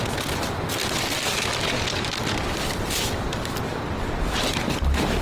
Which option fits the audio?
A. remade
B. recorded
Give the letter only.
B